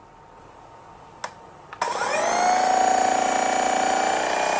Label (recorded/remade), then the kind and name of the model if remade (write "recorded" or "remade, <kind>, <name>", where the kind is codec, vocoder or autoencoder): recorded